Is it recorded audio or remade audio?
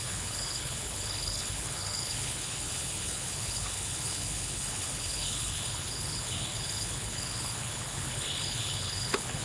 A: remade